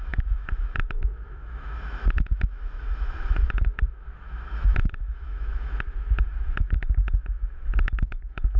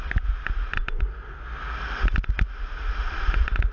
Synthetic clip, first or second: first